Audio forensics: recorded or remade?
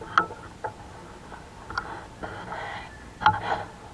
recorded